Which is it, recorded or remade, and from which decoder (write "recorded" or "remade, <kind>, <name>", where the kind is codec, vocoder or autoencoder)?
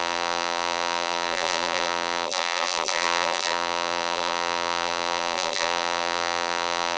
remade, vocoder, BigVGAN v2